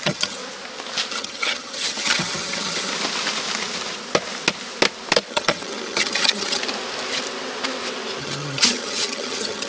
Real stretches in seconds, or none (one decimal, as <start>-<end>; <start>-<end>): 0.4-1.1; 2.9-5.3; 6.6-8.2